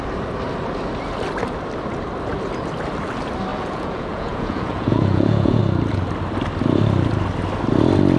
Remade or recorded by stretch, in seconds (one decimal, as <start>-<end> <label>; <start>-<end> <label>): 0.0-3.5 recorded; 3.5-5.6 remade; 5.6-8.2 recorded